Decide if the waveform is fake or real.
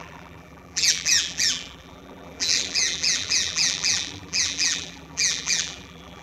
fake